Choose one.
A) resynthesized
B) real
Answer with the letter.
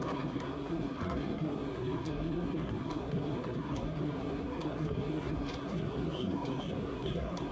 A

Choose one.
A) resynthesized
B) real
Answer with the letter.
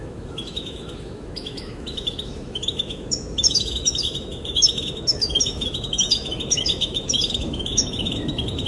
A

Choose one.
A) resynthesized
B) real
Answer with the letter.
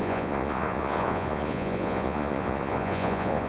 A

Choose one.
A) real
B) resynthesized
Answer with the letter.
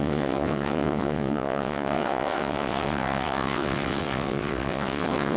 B